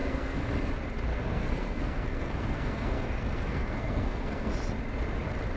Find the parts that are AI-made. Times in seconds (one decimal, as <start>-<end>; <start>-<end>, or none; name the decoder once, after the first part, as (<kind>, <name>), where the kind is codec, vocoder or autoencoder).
0.0-0.5 (codec, SNAC); 1.1-4.5